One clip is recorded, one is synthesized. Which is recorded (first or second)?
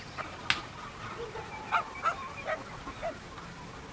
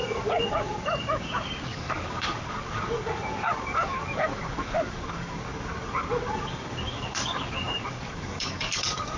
first